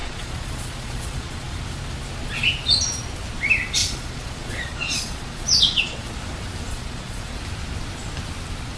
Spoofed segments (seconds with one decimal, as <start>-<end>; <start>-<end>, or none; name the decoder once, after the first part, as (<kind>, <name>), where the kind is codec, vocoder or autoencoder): 0.0-1.6 (vocoder, Vocos); 3.8-6.1; 6.7-7.4